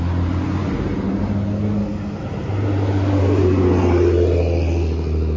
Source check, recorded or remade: recorded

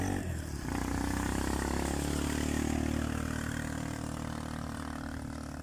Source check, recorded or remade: recorded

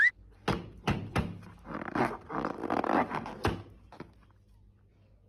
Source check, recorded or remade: recorded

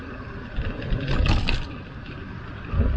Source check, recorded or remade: recorded